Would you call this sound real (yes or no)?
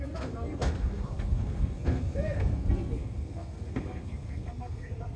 no